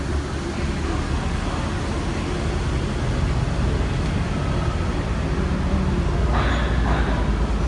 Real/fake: real